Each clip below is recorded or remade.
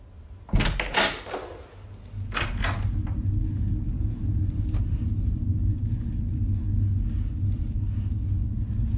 recorded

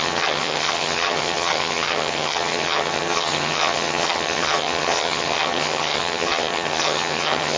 remade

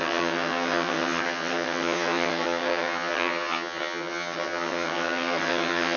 remade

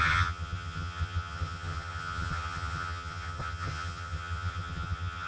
remade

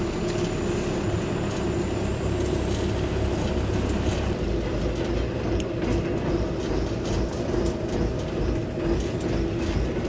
recorded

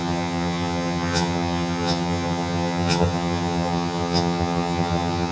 remade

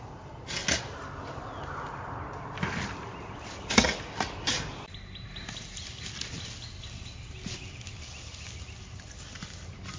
recorded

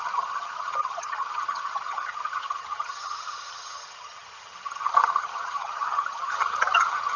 remade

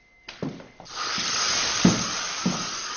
recorded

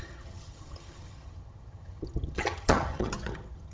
remade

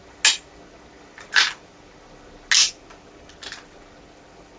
recorded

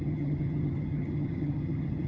remade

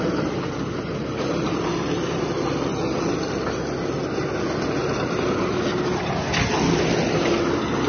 recorded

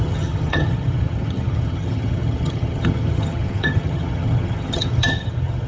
remade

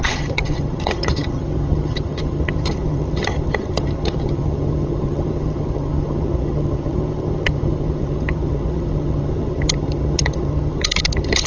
remade